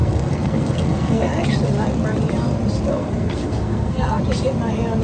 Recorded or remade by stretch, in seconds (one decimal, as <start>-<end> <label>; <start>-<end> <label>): 0.0-1.3 remade; 1.3-2.9 recorded; 2.9-4.2 remade; 4.2-5.0 recorded